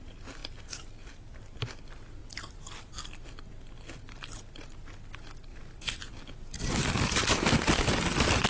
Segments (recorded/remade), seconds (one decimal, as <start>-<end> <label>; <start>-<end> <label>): 0.0-2.2 recorded; 2.2-2.9 remade; 2.9-8.5 recorded